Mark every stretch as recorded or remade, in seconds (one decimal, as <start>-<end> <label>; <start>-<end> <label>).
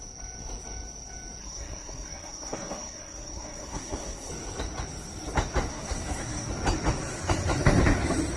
0.0-1.4 recorded; 1.4-4.3 remade; 4.3-5.7 recorded; 5.7-6.5 remade; 6.5-8.4 recorded